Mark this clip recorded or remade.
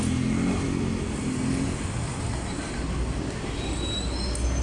recorded